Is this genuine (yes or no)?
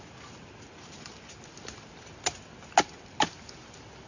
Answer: yes